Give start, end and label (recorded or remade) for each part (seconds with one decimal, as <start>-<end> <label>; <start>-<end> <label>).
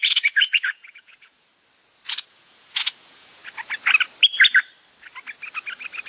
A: 0.0-1.5 remade; 1.5-2.3 recorded; 2.3-3.4 remade; 3.4-6.1 recorded